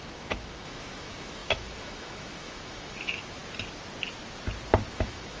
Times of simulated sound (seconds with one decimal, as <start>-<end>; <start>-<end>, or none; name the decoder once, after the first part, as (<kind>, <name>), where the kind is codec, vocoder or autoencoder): 0.0-3.4 (autoencoder, DAC-VAE); 4.9-5.4